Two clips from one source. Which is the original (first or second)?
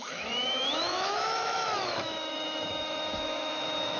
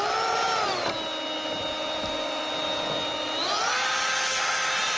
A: second